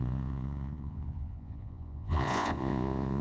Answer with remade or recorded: remade